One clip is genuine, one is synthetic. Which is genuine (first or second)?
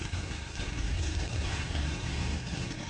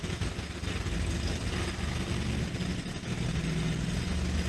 second